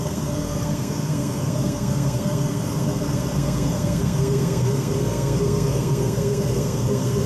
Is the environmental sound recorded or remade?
remade